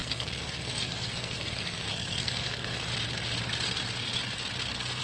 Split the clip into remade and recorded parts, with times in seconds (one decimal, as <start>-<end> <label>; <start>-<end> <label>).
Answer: 0.0-2.9 remade; 2.9-5.0 recorded